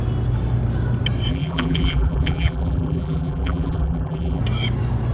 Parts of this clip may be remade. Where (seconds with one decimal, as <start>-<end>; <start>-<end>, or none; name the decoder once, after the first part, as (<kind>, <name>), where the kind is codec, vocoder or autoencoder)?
1.3-4.4 (vocoder, BigVGAN v2)